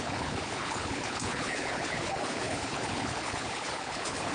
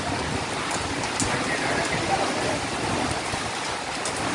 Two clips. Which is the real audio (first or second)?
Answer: second